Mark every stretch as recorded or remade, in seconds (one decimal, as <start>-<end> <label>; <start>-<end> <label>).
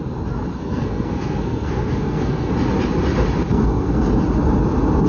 0.0-0.5 recorded; 0.5-2.5 remade; 2.5-3.5 recorded; 3.5-4.1 remade; 4.1-5.1 recorded